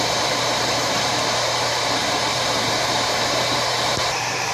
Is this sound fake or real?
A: fake